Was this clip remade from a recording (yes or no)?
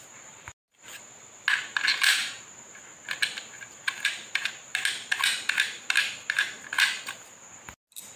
no